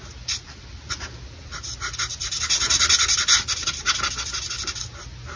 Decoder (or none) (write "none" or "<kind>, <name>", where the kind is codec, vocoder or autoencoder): none